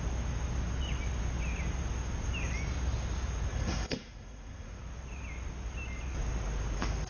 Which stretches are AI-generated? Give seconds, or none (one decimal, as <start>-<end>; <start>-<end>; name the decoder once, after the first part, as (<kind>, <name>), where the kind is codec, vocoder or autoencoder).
3.5-4.8 (vocoder, Vocos)

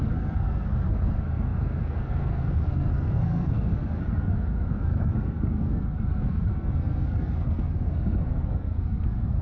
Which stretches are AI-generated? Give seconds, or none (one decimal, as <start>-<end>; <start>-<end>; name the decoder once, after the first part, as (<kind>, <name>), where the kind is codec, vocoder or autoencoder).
0.0-9.4 (codec, SNAC)

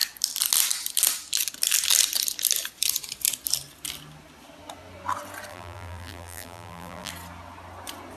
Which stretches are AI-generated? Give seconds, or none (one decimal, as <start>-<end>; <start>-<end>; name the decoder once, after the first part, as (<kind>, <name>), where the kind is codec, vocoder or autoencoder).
5.5-7.1 (vocoder, BigVGAN v2)

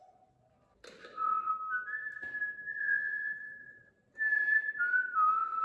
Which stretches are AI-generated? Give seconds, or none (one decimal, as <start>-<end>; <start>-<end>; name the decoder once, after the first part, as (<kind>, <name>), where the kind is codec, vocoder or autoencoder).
1.0-1.5 (vocoder, WaveNeXt); 2.8-3.9

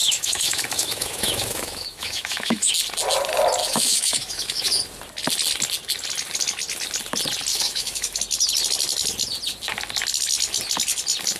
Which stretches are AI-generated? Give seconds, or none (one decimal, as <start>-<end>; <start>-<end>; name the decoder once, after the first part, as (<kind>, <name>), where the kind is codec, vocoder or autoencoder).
0.0-2.7 (autoencoder, DAC-VAE); 3.6-4.8; 7.5-8.2